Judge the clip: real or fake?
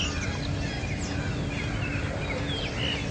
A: real